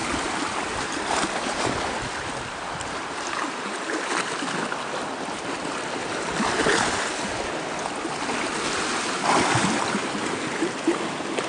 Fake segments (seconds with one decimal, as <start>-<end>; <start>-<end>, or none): none